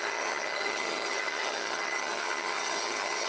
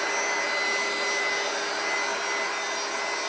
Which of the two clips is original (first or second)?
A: second